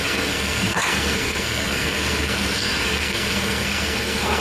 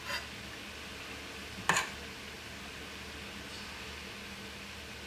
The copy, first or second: first